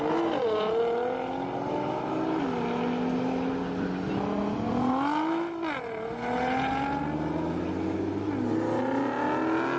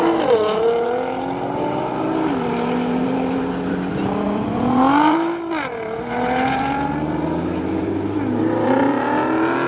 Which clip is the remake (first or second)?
second